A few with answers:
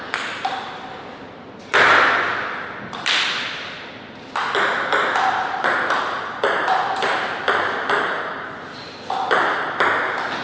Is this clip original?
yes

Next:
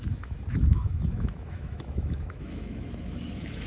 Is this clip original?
no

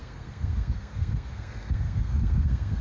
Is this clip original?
no